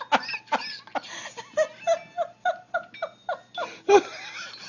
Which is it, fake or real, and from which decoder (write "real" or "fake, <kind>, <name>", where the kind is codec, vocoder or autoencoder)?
real